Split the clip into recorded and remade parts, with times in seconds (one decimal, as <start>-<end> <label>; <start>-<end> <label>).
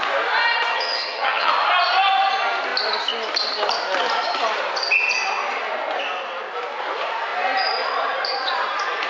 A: 0.0-0.7 recorded; 0.7-1.5 remade; 1.5-9.1 recorded